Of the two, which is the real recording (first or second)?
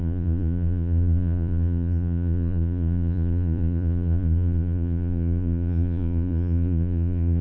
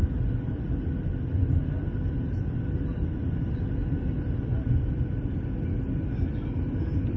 second